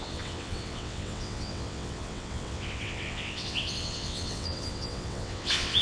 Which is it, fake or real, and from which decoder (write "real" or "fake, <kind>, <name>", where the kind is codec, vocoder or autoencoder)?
fake, vocoder, WaveNeXt